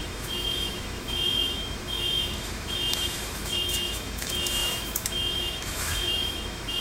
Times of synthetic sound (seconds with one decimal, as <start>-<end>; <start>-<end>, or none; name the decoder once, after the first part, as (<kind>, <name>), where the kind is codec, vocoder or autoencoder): 0.0-6.8 (autoencoder, DAC-VAE)